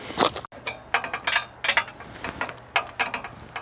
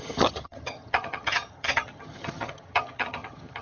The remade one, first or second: second